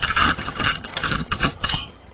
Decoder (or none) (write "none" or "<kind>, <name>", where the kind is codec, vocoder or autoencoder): vocoder, HiFi-GAN